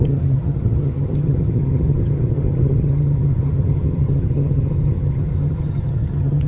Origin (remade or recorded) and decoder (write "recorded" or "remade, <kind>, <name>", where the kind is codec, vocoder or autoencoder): remade, vocoder, HiFi-GAN